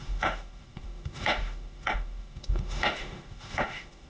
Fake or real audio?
fake